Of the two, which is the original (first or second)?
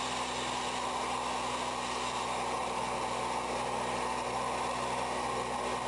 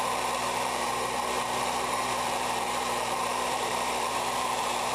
first